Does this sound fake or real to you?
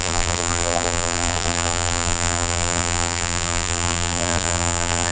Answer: fake